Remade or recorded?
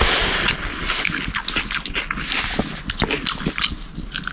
recorded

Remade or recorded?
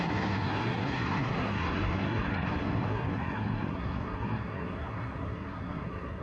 remade